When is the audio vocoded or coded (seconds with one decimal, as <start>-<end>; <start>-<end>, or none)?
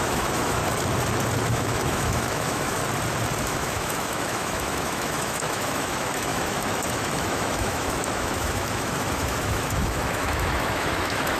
0.0-0.6; 1.5-2.8; 3.4-11.4